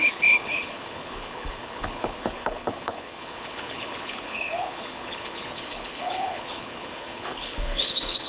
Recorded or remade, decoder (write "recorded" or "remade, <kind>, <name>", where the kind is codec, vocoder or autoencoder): remade, codec, HILCodec